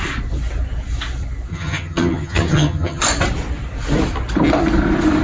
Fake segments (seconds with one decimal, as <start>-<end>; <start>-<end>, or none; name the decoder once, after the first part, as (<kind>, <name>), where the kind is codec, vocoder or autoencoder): 1.5-3.0 (vocoder, HiFi-GAN)